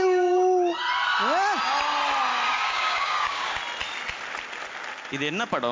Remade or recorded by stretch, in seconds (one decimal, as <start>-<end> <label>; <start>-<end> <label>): 0.0-2.3 recorded; 2.3-3.6 remade; 3.6-5.7 recorded